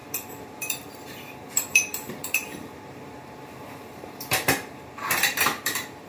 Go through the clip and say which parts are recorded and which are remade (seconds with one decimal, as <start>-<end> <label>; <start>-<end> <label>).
0.0-6.1 remade